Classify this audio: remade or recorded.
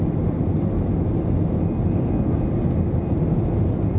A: recorded